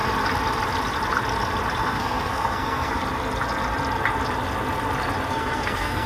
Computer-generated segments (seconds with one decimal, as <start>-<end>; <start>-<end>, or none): 1.8-3.0; 5.3-6.1